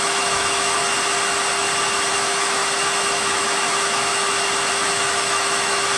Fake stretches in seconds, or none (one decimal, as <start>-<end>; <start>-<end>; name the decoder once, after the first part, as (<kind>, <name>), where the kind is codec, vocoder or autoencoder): 0.0-0.8 (autoencoder, DAC-VAE); 2.1-2.6; 3.1-4.1; 4.7-6.0